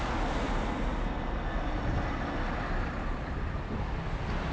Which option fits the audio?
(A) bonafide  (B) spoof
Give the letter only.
A